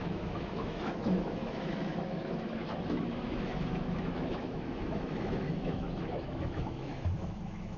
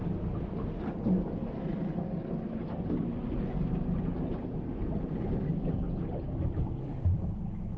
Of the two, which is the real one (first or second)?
second